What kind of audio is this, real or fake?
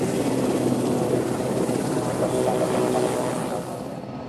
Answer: real